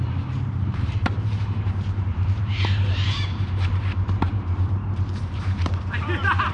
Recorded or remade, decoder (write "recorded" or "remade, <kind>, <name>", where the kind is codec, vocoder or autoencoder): remade, vocoder, BigVGAN v2